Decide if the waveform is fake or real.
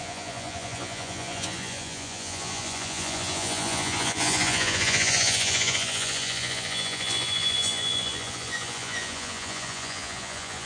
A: fake